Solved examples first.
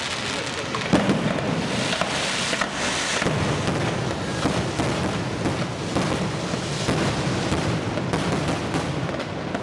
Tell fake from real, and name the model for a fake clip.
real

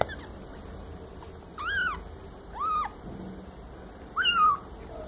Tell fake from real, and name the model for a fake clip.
real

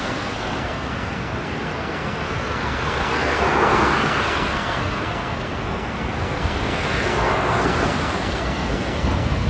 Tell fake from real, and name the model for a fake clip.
fake, codec, SNAC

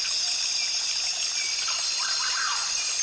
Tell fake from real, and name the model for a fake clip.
real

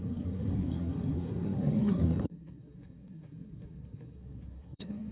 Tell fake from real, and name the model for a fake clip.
fake, codec, SNAC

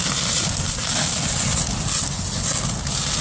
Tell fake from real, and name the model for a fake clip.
real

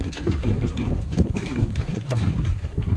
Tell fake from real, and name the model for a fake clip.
fake, codec, SNAC